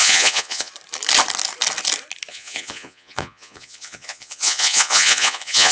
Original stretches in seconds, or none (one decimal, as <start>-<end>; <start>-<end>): 0.7-2.3